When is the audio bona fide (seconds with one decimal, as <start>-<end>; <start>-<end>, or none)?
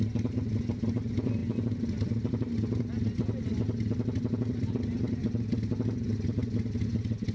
0.0-7.3